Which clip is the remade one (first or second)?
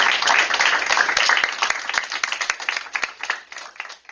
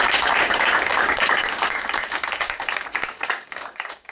second